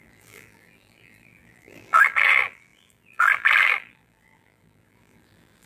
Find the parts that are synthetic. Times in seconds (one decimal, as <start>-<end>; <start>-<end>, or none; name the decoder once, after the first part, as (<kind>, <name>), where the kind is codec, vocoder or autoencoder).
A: 0.0-5.7 (vocoder, BigVGAN v2)